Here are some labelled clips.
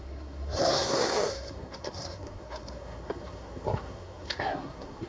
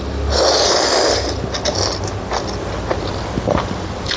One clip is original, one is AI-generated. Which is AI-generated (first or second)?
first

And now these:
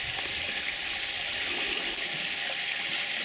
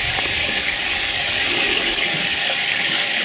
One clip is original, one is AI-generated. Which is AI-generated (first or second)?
second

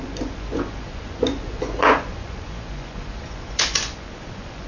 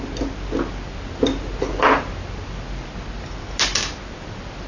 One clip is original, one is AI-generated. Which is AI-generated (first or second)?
first